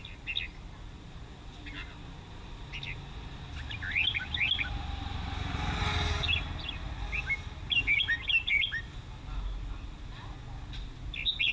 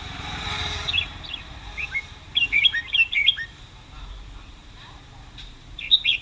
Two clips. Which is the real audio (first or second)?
first